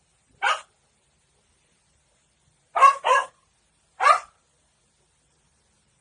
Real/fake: real